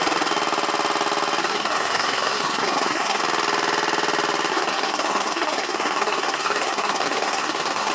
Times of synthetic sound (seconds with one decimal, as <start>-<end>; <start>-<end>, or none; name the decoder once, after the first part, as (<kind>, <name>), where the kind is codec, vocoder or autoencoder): 1.4-3.2 (codec, SNAC); 4.5-7.9